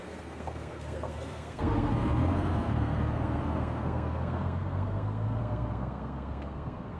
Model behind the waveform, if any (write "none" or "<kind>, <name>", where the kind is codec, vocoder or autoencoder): codec, SNAC